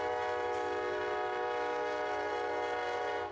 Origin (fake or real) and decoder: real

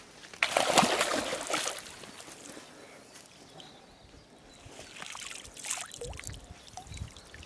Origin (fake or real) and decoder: real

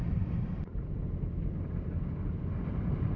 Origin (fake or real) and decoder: real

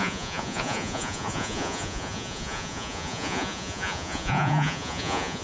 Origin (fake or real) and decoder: fake, vocoder, Vocos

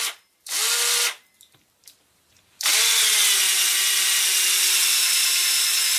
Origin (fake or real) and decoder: real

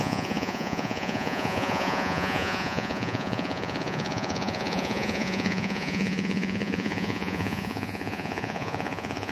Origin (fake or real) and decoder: fake, vocoder, Vocos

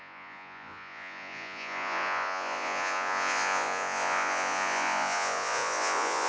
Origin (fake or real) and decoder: fake, vocoder, Vocos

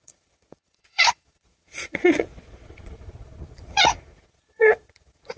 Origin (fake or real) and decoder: fake, vocoder, Vocos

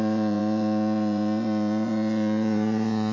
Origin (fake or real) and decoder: fake, vocoder, Vocos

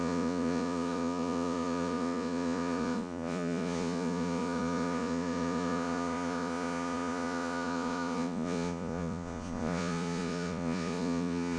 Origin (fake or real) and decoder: fake, vocoder, Vocos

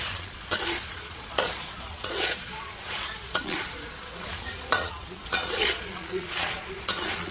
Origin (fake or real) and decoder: fake, vocoder, Vocos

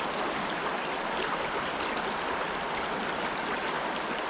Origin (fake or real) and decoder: real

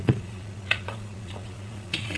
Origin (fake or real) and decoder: fake, vocoder, Vocos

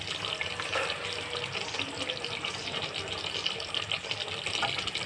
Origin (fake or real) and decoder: real